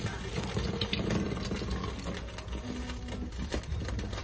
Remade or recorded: recorded